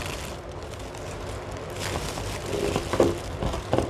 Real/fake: real